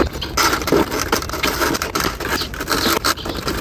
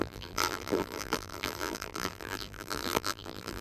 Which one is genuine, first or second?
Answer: first